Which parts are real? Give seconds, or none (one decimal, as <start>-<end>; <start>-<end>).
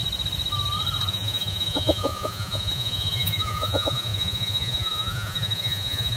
0.0-1.1